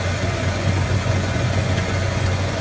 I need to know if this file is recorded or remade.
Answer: remade